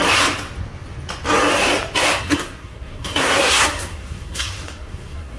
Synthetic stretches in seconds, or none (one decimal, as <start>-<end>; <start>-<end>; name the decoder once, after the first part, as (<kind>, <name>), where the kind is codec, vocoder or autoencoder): 2.1-5.4 (codec, SNAC)